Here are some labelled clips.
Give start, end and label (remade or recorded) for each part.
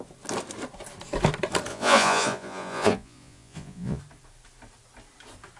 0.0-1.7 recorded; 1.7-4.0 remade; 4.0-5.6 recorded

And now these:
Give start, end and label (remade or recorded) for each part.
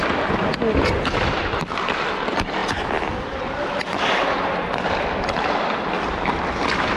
0.0-0.8 recorded; 0.8-7.0 remade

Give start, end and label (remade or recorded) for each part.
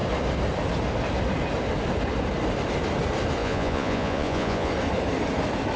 0.0-3.4 recorded; 3.4-4.7 remade; 4.7-5.8 recorded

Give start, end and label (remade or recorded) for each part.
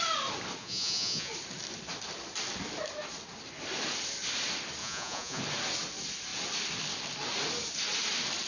0.0-0.6 recorded; 0.6-1.3 remade; 1.3-4.8 recorded; 4.8-5.4 remade; 5.4-8.5 recorded